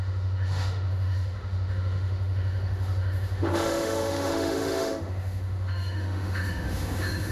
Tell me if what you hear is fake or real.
fake